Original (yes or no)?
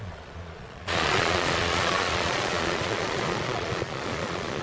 no